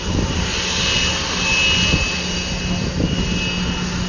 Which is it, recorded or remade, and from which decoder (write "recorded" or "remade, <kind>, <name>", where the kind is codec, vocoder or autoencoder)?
recorded